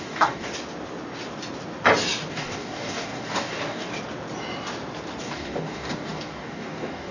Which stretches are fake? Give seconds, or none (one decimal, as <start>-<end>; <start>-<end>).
0.0-0.5; 2.3-3.9; 5.2-7.1